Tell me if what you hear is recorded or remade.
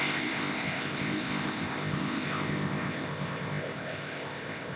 remade